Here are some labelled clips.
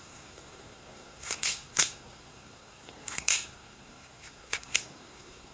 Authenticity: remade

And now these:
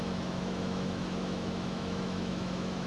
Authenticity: remade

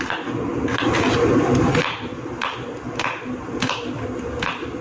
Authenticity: recorded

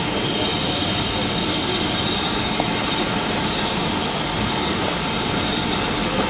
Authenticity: recorded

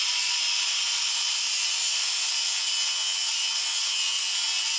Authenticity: recorded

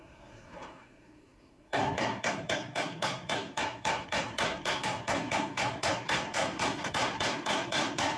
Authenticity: remade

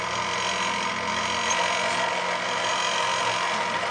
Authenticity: recorded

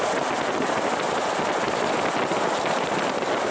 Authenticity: recorded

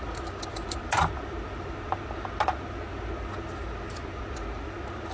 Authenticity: recorded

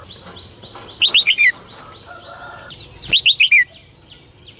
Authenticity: recorded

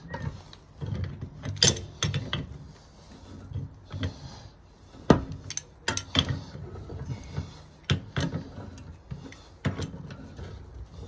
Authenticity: recorded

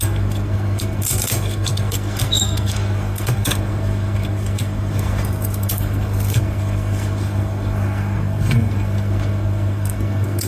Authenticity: remade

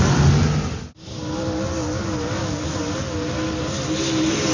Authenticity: recorded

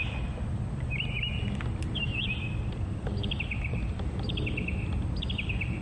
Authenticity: recorded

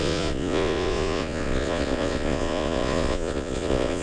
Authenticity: remade